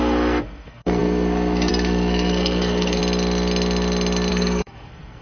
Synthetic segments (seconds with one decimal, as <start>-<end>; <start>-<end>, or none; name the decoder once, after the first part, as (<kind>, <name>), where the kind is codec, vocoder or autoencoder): 0.0-3.0 (codec, SNAC); 4.3-5.2